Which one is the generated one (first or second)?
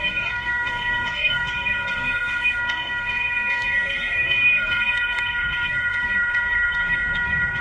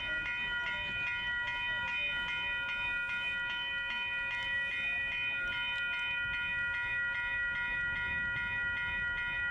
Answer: first